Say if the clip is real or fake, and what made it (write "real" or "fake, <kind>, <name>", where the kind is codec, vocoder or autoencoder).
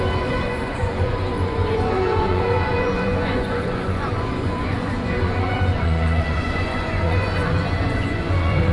fake, vocoder, Vocos